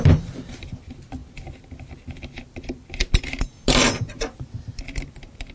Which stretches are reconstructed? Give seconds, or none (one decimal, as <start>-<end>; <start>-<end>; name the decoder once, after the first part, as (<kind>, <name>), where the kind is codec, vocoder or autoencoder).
none